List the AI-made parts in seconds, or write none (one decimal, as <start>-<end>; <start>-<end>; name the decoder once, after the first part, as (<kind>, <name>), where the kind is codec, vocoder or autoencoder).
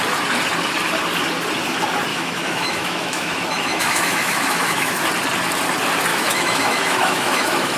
2.1-5.0 (autoencoder, DAC-VAE); 6.1-7.8